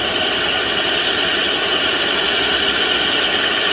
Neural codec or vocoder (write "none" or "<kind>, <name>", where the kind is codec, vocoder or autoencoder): none